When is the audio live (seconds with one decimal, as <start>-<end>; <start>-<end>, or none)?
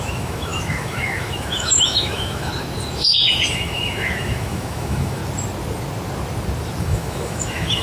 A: 2.5-3.5; 5.2-6.8